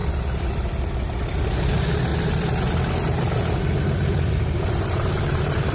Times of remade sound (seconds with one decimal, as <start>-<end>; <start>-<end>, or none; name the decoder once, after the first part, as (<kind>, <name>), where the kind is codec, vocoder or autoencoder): 1.7-2.1 (vocoder, BigVGAN v2); 3.7-5.7